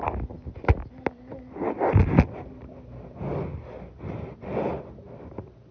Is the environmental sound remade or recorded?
recorded